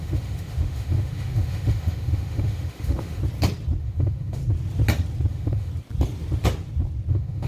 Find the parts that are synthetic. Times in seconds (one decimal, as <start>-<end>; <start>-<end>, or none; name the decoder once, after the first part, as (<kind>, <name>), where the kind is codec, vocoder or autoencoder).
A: 0.0-3.2 (autoencoder, DAC-VAE); 3.8-4.4; 5.3-5.7; 7.1-7.5

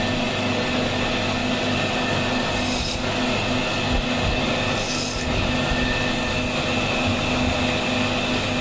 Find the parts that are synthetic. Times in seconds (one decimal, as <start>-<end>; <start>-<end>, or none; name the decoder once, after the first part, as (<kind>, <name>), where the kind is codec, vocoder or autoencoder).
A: none